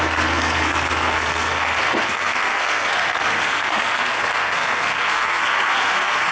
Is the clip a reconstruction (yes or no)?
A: yes